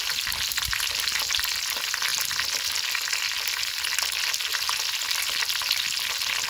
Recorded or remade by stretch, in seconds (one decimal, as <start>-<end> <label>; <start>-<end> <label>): 0.0-6.5 recorded